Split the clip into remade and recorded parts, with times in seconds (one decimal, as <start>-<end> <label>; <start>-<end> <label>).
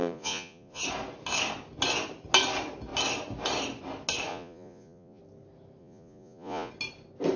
0.0-0.8 remade; 0.8-4.3 recorded; 4.3-5.2 remade; 5.2-5.8 recorded; 5.8-6.7 remade; 6.7-7.4 recorded